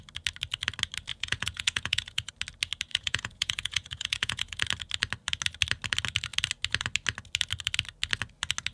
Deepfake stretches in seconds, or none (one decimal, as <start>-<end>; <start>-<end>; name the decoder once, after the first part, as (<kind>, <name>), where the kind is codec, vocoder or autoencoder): 1.1-2.3 (vocoder, Vocos); 2.9-4.6